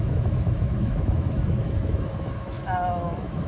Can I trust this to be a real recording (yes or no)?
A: no